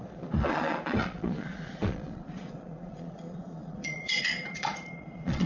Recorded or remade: remade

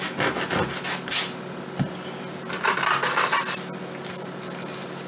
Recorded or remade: recorded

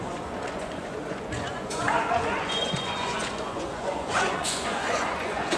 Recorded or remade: remade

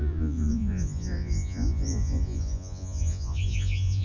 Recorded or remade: remade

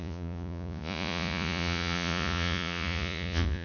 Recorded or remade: remade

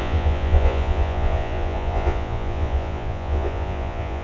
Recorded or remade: remade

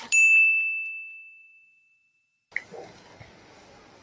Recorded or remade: recorded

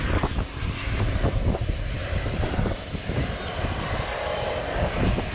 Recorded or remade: recorded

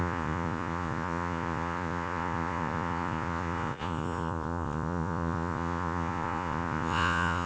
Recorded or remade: remade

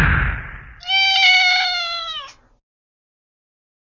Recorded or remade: recorded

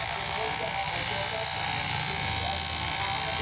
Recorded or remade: recorded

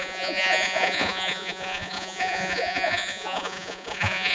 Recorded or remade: remade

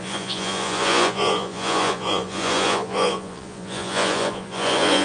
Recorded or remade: remade